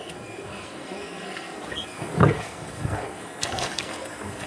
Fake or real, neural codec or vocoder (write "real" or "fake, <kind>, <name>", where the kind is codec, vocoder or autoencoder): fake, codec, SNAC